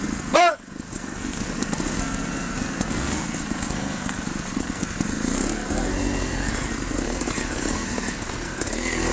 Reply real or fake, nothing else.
fake